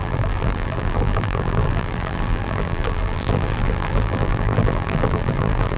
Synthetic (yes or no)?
yes